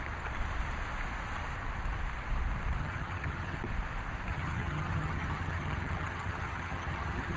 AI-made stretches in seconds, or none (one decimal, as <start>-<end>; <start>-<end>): 2.8-3.6; 4.3-7.4